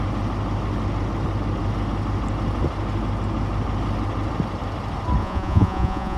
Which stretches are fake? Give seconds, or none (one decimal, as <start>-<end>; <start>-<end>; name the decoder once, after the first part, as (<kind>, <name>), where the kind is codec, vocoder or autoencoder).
5.2-6.2 (vocoder, Vocos)